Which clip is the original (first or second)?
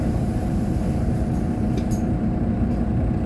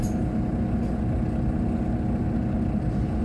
second